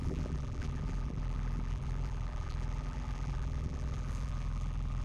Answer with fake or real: fake